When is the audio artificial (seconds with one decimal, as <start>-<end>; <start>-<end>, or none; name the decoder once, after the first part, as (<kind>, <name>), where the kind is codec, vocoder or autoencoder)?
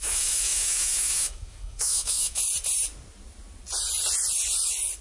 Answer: 0.0-2.4 (autoencoder, DAC-VAE)